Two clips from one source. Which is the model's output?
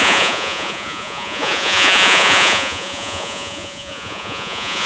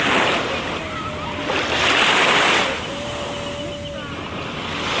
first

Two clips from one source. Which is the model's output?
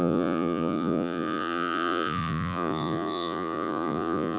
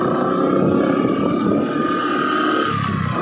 first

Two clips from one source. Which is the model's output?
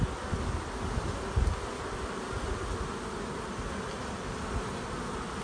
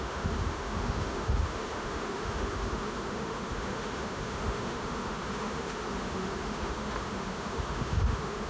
second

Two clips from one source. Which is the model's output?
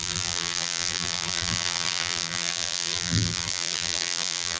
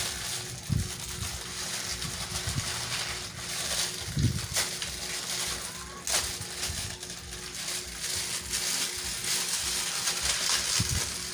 first